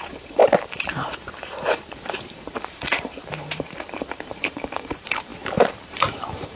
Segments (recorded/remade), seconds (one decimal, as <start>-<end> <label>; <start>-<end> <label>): 0.0-6.6 remade